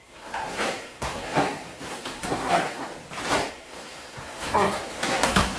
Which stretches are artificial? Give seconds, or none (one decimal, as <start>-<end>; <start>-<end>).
0.0-2.9; 3.5-5.6